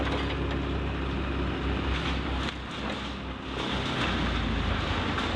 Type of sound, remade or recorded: recorded